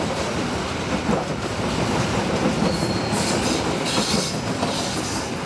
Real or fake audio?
real